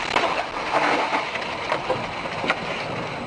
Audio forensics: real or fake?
real